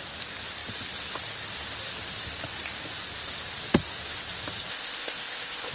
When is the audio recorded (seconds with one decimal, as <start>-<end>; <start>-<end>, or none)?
0.0-4.7